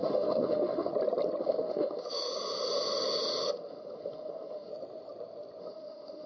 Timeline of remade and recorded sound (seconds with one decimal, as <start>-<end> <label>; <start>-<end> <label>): 0.0-0.9 remade; 0.9-1.4 recorded; 1.4-2.3 remade; 2.3-3.5 recorded; 3.5-4.7 remade; 4.7-5.6 recorded; 5.6-6.3 remade